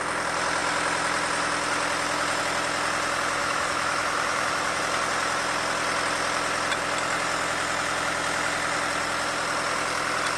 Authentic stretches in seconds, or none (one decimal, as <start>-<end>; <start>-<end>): 0.0-3.4; 4.8-10.4